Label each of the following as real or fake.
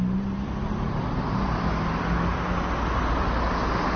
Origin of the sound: real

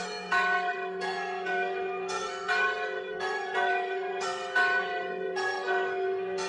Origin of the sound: fake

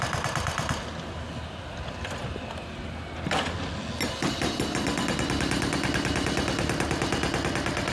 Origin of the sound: real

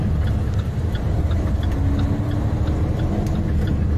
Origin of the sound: real